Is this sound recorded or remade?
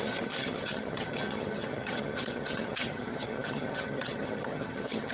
remade